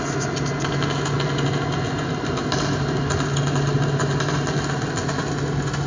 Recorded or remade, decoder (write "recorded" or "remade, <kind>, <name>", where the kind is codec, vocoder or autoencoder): recorded